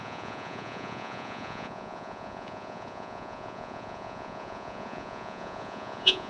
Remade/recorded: remade